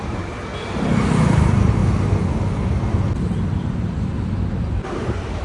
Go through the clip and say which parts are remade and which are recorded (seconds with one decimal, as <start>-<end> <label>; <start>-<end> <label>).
0.0-0.5 remade; 0.5-1.1 recorded; 1.1-1.8 remade; 1.8-4.8 recorded; 4.8-5.4 remade